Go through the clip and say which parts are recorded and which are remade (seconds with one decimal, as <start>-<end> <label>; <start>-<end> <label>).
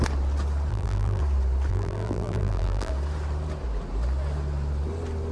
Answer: 0.0-0.7 recorded; 0.7-1.2 remade; 1.2-1.7 recorded; 1.7-2.9 remade; 2.9-5.3 recorded